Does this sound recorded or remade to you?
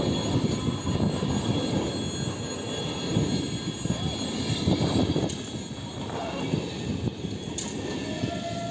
recorded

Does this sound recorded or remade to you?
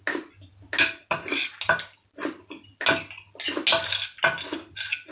recorded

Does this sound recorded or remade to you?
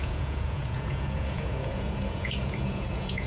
remade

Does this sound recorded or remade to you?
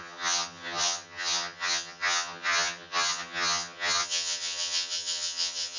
remade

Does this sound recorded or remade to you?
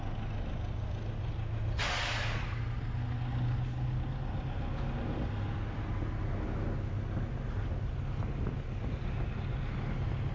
recorded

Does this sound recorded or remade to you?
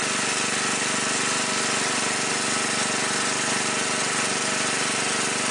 recorded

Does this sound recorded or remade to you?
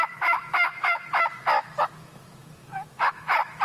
remade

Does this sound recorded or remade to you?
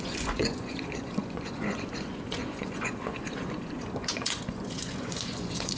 remade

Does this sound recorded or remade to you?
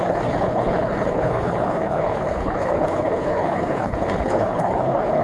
remade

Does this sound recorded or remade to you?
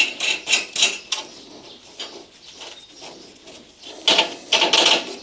recorded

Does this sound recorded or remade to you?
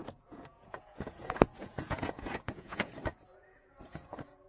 remade